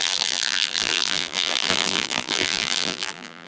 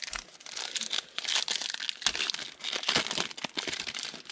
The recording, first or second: second